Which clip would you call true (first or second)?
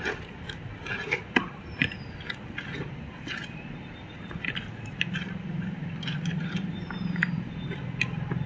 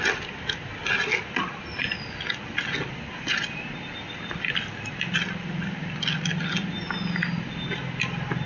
second